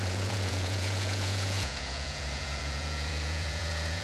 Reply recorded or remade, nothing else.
remade